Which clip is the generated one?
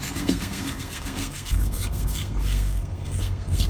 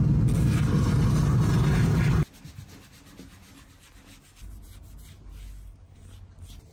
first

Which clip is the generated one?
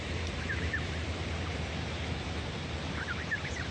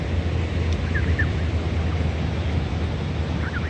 first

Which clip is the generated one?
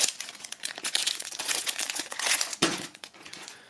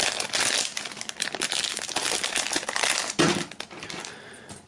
first